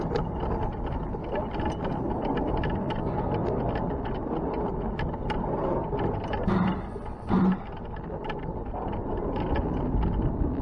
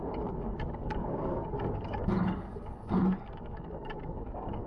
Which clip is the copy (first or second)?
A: second